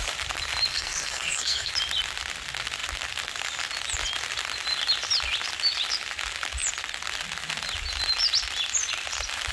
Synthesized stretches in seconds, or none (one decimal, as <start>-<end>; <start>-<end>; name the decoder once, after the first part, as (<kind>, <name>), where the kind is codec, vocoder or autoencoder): 0.7-1.7 (codec, SNAC)